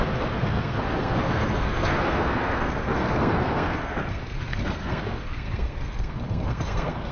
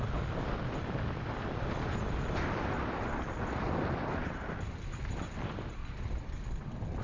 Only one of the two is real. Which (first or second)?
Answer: second